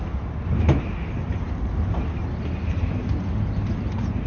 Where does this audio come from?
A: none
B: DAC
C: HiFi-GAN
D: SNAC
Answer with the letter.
A